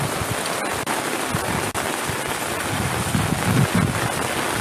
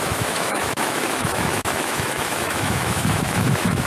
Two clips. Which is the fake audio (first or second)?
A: second